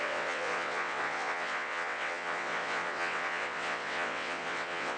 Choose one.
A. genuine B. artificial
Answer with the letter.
B